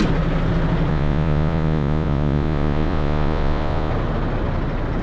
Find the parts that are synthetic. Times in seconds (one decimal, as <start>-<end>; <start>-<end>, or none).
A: 0.9-3.9